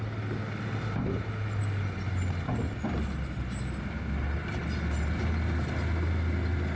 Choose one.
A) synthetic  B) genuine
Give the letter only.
B